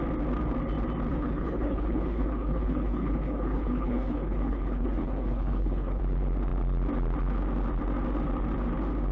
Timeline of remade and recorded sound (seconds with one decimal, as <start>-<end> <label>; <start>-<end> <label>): 0.0-1.1 recorded; 1.1-6.0 remade; 6.0-9.1 recorded